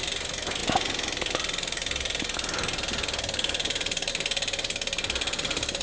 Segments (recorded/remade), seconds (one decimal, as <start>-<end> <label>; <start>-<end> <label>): 0.0-5.8 recorded